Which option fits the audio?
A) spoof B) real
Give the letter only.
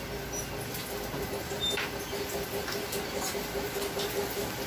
B